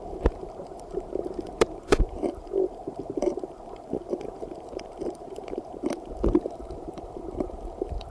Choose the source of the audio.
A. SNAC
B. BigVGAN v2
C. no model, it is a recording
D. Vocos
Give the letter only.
B